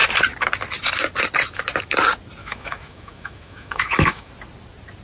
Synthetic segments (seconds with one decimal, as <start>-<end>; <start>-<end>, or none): 2.4-4.3